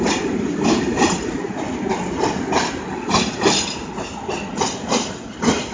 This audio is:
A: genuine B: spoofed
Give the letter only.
A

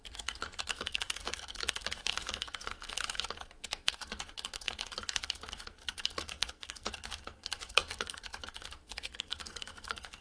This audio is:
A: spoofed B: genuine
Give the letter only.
A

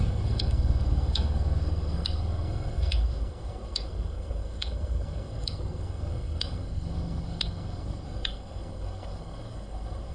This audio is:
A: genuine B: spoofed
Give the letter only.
B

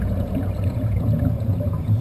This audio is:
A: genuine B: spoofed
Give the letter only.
B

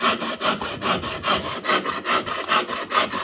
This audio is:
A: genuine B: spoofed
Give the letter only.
A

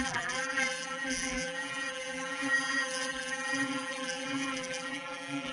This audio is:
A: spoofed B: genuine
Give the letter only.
A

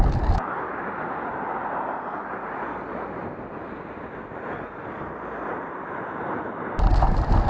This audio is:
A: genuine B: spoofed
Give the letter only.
A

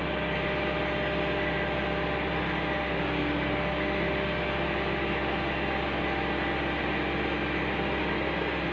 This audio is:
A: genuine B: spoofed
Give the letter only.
A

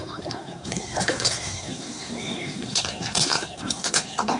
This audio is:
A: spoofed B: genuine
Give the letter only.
A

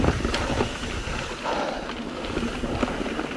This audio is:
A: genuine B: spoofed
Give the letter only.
A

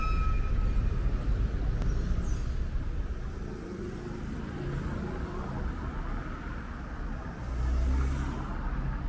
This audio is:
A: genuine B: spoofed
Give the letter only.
A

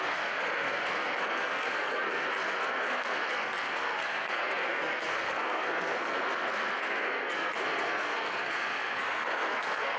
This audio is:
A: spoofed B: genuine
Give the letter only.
A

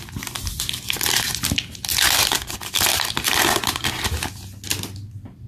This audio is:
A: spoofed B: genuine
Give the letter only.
B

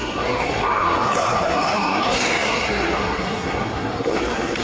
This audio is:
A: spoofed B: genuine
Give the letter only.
A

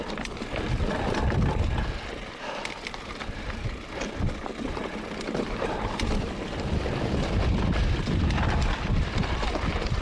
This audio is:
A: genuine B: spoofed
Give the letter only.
B